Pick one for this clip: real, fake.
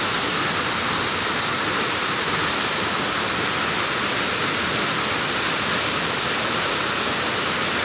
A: real